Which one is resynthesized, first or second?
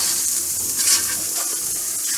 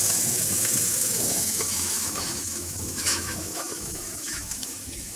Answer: second